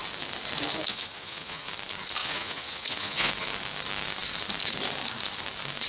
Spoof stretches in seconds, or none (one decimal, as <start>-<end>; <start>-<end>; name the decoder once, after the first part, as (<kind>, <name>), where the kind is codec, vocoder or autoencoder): 0.9-1.7 (vocoder, Vocos); 2.2-3.3

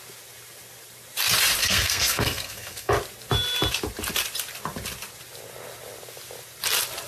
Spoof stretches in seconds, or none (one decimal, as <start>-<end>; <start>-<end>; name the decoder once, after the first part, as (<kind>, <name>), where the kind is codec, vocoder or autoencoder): 1.6-2.9 (codec, SNAC)